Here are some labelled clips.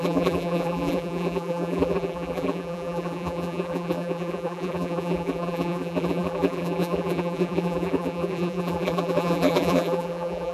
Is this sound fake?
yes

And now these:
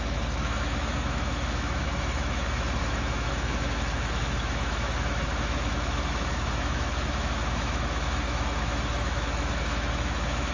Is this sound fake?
yes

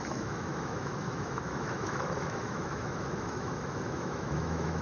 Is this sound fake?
yes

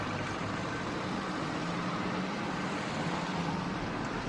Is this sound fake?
yes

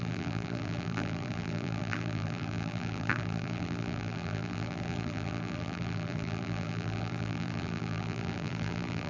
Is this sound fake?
yes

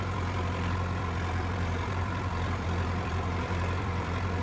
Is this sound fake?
yes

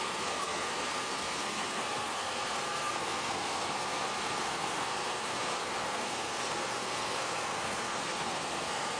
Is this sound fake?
yes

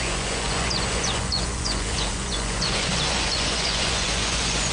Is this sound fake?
yes